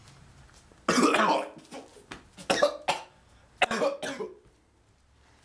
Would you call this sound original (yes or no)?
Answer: yes